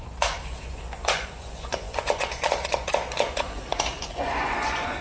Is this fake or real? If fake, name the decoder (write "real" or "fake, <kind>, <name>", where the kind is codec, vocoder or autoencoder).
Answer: fake, vocoder, Vocos